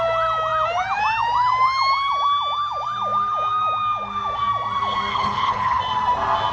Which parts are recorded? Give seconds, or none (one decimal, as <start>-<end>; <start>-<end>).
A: 0.0-5.1; 5.8-6.5